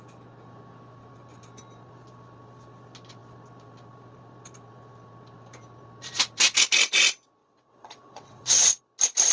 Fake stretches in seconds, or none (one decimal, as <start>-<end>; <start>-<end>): 7.4-8.8